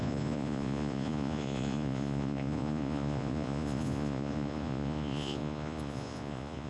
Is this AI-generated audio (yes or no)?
yes